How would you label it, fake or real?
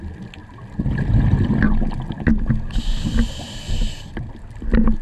real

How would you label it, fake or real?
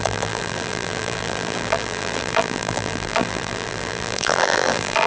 fake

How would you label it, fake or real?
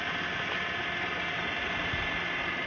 real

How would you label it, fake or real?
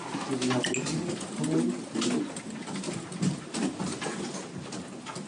real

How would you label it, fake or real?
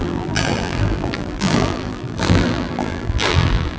fake